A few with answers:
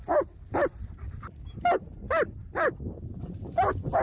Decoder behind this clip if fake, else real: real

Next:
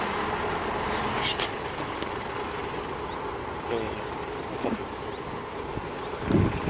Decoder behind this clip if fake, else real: real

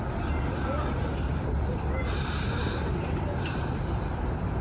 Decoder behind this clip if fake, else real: real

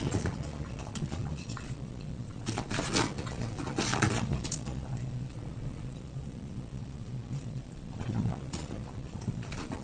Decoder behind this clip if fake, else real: fake, vocoder, Vocos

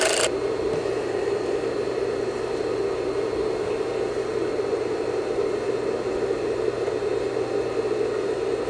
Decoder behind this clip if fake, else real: real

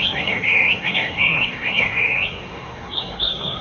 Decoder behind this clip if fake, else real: fake, codec, SNAC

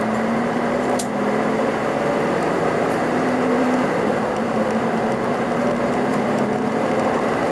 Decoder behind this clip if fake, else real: fake, vocoder, BigVGAN v2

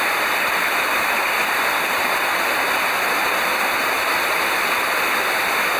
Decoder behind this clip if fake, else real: fake, vocoder, BigVGAN v2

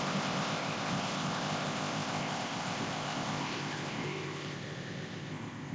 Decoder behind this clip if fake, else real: fake, codec, ZipCodec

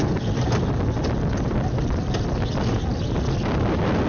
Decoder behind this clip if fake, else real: real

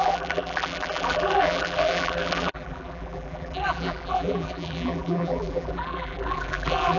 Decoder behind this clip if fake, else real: fake, vocoder, BigVGAN v2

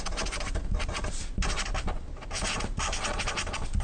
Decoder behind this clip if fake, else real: real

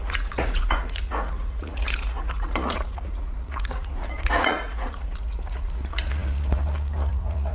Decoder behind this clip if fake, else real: fake, vocoder, Vocos